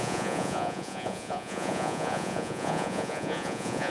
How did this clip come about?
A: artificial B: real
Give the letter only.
A